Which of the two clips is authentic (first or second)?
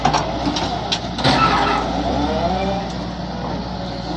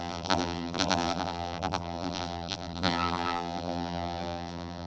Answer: first